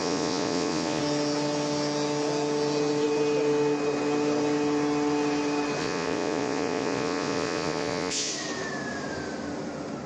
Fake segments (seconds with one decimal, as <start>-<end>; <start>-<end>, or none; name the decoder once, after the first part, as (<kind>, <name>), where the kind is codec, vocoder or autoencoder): 0.0-1.0 (vocoder, Vocos); 5.8-8.3